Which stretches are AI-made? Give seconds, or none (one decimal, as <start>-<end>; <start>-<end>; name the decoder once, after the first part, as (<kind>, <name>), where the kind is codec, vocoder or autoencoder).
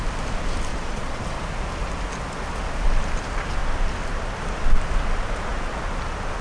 0.7-1.3 (vocoder, Vocos)